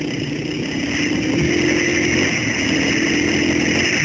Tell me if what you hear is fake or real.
real